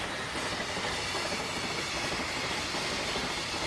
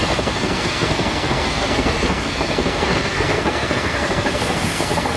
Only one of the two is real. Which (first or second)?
first